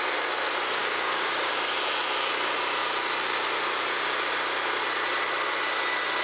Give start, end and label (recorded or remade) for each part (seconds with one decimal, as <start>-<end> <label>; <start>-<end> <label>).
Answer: 0.0-0.8 recorded; 0.8-1.8 remade; 1.8-6.2 recorded